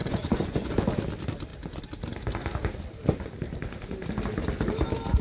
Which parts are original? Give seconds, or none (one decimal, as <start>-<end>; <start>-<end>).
0.7-5.2